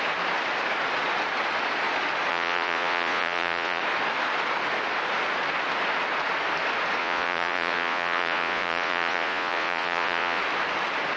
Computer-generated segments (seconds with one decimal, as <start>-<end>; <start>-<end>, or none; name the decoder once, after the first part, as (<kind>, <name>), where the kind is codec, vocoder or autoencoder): 2.3-3.8 (vocoder, Vocos); 7.0-10.4